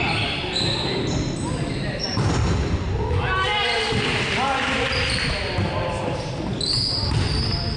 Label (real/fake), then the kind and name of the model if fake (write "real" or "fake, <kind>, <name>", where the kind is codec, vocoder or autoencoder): real